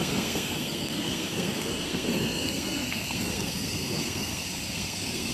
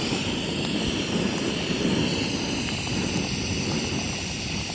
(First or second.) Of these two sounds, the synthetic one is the first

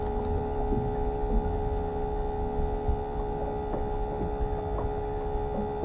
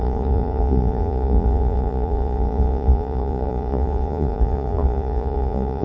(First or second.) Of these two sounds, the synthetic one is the second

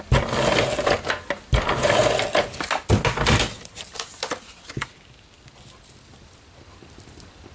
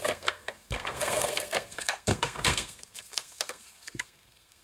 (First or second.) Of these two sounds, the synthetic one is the second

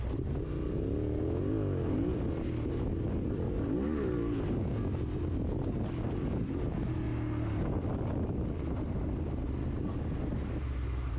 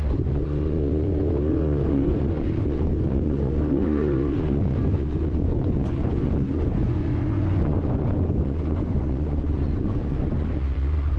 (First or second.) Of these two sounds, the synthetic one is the second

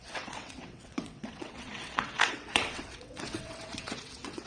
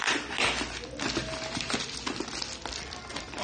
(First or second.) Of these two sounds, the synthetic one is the first